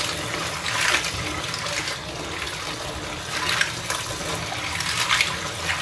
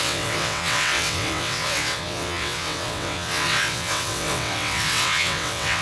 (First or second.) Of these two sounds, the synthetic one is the second